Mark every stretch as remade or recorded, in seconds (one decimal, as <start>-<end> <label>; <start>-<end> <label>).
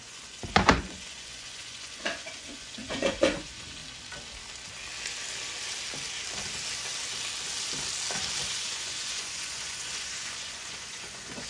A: 0.0-3.8 remade; 3.8-8.4 recorded; 8.4-11.5 remade